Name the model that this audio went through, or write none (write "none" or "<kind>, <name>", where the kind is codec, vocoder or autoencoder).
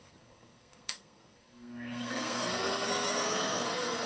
codec, SNAC